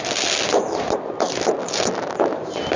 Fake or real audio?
real